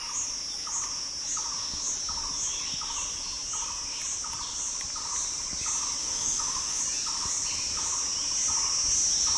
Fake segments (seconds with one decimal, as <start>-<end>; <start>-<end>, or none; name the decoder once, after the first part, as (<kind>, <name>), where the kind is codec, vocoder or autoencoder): 6.0-6.8 (autoencoder, DAC-VAE)